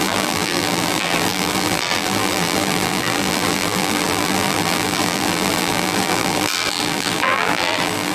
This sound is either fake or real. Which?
fake